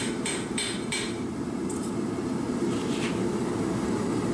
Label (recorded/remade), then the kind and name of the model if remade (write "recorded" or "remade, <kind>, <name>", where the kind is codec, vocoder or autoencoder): remade, vocoder, BigVGAN v2